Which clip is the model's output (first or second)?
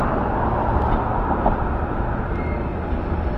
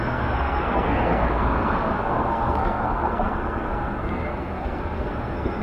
second